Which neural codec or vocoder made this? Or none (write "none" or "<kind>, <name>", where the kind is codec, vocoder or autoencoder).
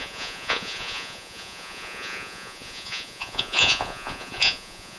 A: vocoder, Vocos